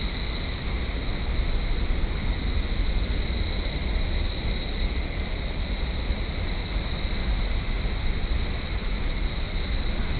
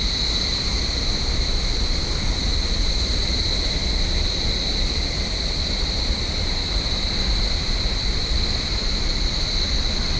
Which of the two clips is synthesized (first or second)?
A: second